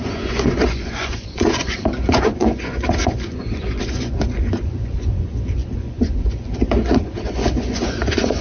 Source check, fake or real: fake